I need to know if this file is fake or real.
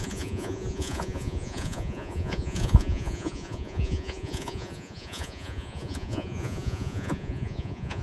fake